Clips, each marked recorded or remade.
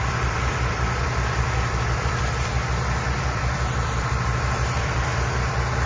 remade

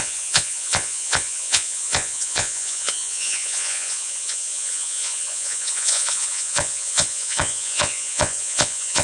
remade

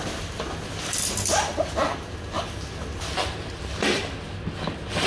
recorded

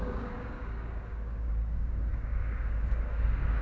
remade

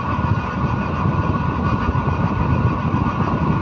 recorded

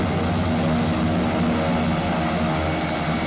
recorded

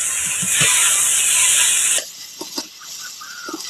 recorded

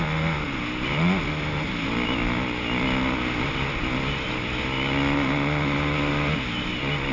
recorded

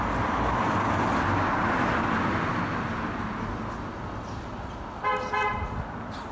recorded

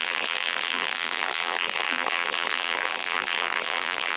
remade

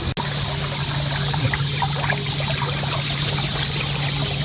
recorded